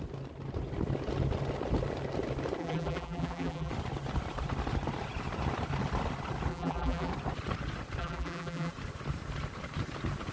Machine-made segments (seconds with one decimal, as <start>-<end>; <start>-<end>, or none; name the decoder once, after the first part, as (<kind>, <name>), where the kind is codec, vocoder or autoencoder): 2.6-3.7 (vocoder, BigVGAN v2); 6.5-7.1; 8.0-8.7

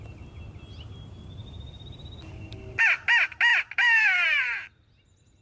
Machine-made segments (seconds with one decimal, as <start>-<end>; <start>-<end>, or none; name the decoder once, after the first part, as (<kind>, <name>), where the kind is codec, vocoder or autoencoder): 1.4-2.8 (vocoder, BigVGAN v2); 3.5-5.4

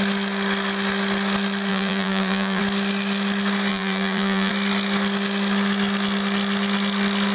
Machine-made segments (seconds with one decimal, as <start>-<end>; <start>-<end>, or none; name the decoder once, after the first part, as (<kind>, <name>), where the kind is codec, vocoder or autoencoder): 1.7-2.6 (vocoder, BigVGAN v2); 3.7-4.5